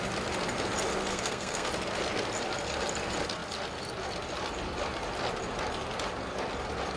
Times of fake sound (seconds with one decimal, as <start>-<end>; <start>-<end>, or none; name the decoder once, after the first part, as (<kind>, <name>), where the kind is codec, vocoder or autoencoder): 1.1-1.7 (codec, SNAC)